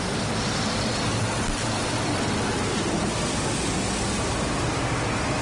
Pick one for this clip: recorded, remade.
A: recorded